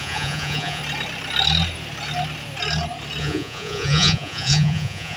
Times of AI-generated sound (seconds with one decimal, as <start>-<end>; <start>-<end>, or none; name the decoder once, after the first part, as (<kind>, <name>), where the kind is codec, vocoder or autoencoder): 0.0-0.8 (vocoder, Vocos); 3.2-5.2